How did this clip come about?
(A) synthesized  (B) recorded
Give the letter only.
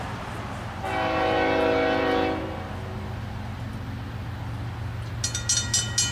B